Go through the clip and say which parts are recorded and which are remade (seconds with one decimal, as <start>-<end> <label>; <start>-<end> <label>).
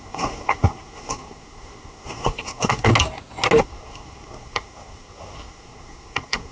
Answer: 0.0-2.9 remade; 2.9-3.6 recorded; 3.6-6.5 remade